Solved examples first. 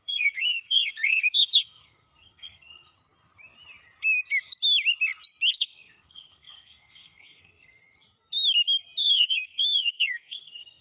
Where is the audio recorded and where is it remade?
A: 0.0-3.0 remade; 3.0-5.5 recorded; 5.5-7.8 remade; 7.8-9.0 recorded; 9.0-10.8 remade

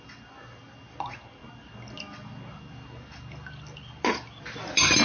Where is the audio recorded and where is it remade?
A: 0.0-5.0 recorded

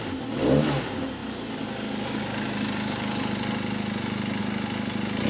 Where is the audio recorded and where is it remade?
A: 0.0-5.3 recorded

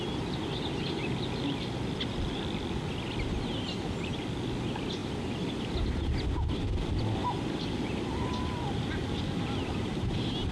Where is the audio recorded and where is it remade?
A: 0.0-10.5 recorded

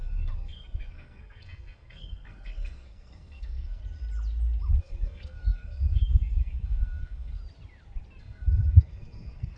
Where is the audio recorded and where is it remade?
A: 0.0-3.8 remade; 3.8-4.8 recorded; 4.8-7.4 remade; 7.4-8.2 recorded; 8.2-9.6 remade